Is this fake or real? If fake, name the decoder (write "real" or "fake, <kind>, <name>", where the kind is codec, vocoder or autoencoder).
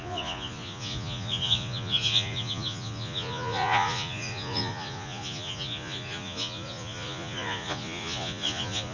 fake, vocoder, Vocos